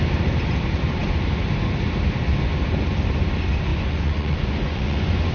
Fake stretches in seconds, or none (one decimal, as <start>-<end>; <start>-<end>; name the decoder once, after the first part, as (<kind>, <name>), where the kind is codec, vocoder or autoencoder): 3.7-5.3 (vocoder, Vocos)